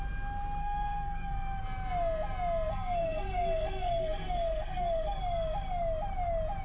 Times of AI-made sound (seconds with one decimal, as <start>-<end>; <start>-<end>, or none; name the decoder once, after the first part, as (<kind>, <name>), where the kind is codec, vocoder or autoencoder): 0.6-1.6 (codec, SNAC); 2.7-5.2